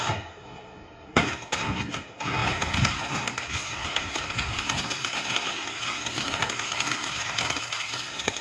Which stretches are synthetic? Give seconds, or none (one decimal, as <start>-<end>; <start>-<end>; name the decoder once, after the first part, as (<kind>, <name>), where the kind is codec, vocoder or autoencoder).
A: 0.0-8.4 (codec, SNAC)